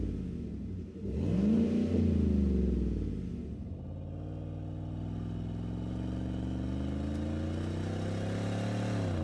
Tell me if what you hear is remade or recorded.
recorded